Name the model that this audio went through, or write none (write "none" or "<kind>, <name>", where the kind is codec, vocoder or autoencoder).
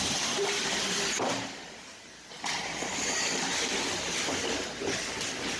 none